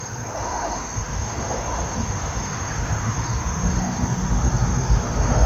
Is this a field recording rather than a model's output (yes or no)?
no